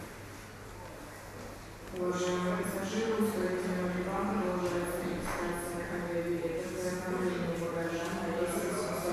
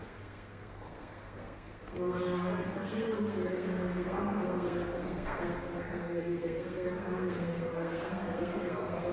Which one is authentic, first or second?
first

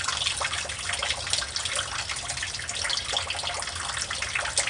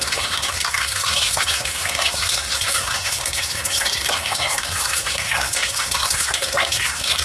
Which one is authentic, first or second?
first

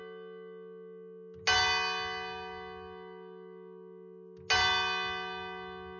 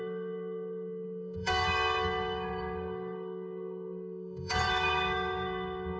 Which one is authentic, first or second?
first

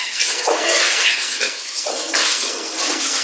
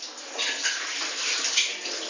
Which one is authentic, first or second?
second